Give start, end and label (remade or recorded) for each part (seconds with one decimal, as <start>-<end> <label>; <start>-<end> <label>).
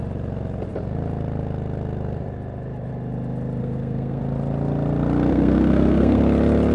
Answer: 0.0-3.6 recorded; 3.6-4.2 remade; 4.2-5.3 recorded; 5.3-6.2 remade; 6.2-6.7 recorded